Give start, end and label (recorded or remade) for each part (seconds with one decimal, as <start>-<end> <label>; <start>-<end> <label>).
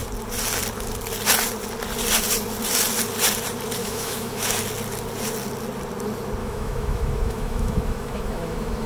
0.0-3.8 recorded; 3.8-4.6 remade; 4.6-6.4 recorded; 6.4-8.9 remade